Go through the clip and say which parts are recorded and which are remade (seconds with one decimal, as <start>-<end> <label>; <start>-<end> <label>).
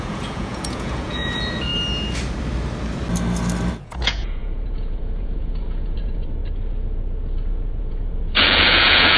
0.0-1.7 remade; 1.7-3.7 recorded; 3.7-6.4 remade; 6.4-7.5 recorded; 7.5-9.2 remade